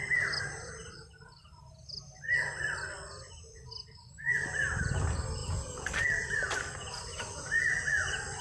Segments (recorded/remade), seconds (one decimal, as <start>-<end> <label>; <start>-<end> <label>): 0.0-0.8 recorded; 0.8-2.8 remade; 2.8-5.4 recorded; 5.4-7.5 remade; 7.5-8.4 recorded